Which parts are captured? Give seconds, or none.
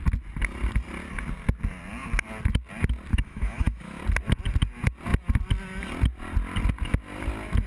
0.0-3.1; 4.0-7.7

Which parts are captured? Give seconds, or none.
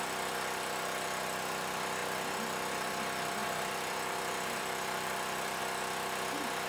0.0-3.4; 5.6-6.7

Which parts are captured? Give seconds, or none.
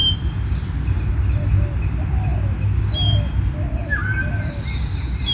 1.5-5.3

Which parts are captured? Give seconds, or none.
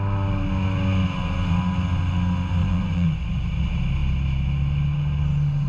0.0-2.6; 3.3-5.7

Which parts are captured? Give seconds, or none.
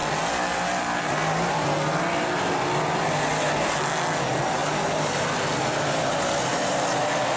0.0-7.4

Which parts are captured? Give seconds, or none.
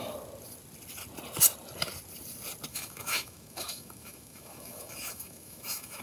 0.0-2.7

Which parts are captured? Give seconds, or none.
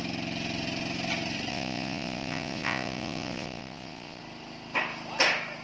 0.0-1.5; 4.2-5.6